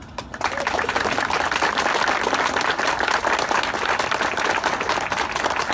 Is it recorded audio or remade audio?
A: recorded